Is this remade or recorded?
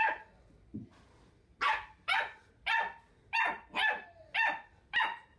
recorded